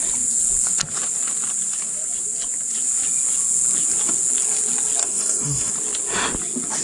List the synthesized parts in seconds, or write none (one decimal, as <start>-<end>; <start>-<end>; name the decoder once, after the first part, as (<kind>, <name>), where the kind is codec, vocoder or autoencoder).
5.0-5.7 (codec, SNAC)